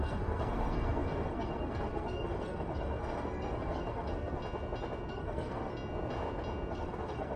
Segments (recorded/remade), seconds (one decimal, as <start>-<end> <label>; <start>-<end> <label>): 0.0-4.4 remade; 4.4-5.1 recorded; 5.1-5.7 remade; 5.7-6.7 recorded; 6.7-7.4 remade